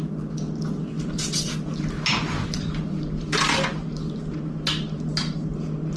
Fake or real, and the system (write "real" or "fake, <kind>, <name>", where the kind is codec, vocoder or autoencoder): real